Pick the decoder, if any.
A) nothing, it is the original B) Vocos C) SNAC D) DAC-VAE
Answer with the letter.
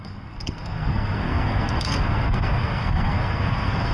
C